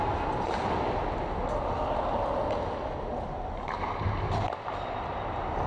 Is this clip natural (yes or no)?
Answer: yes